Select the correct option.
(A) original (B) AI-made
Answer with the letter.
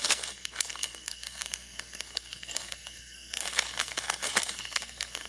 B